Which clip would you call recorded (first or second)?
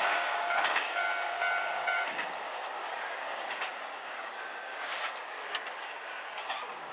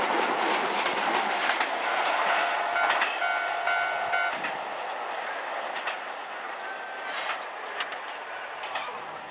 second